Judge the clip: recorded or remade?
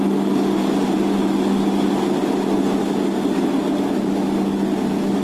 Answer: recorded